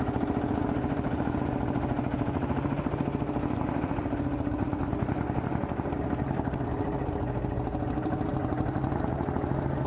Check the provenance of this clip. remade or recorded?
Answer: recorded